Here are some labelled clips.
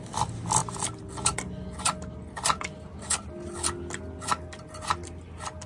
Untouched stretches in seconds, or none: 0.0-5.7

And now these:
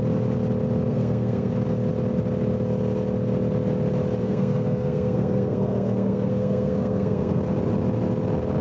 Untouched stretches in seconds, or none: 0.0-0.9; 1.5-4.2; 7.4-8.6

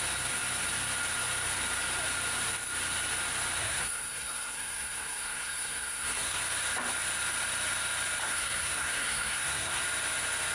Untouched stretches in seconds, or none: 0.0-3.6; 6.4-8.2; 9.8-10.5

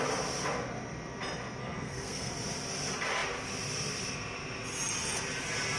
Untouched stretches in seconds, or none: 0.0-1.6; 2.3-5.8

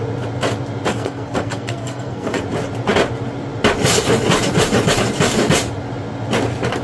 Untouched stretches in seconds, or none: 0.0-0.9; 2.4-6.8

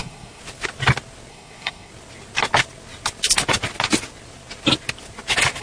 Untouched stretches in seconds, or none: 0.4-1.3; 1.9-5.6